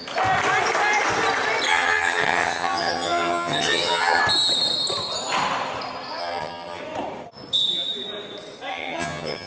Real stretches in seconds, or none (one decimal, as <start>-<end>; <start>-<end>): 0.0-1.7; 4.2-6.2; 6.8-8.7

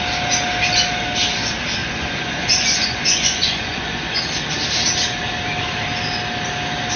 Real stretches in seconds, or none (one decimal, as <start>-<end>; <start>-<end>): 0.0-1.8; 4.2-7.0

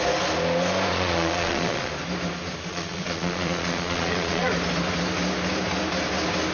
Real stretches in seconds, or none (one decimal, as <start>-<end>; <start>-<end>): 0.0-0.9; 1.9-2.7; 4.5-6.5